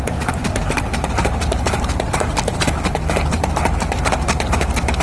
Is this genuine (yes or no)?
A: no